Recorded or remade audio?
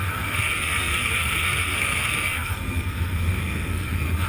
remade